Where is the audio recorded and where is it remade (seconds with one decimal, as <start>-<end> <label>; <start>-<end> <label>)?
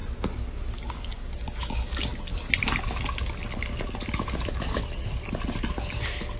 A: 0.0-6.4 recorded